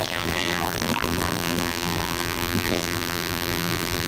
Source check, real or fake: fake